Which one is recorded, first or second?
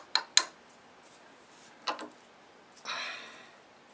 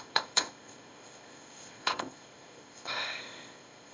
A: first